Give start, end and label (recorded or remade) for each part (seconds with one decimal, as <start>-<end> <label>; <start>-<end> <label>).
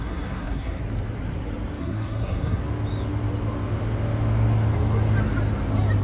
0.0-0.8 remade; 0.8-1.8 recorded; 1.8-2.6 remade; 2.6-6.0 recorded